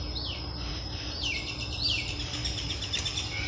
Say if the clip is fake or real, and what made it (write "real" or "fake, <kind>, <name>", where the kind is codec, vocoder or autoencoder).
fake, vocoder, BigVGAN v2